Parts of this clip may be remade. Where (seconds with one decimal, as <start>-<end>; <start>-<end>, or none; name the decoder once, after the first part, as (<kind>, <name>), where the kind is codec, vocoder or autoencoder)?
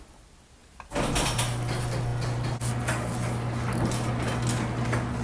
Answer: 0.6-1.4 (vocoder, BigVGAN v2)